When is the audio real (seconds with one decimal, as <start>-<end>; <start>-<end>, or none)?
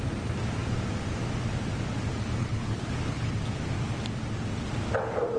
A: 0.0-2.4; 3.3-5.4